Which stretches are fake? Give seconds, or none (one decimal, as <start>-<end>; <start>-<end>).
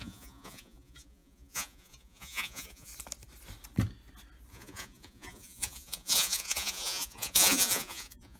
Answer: 0.0-2.9; 4.5-8.4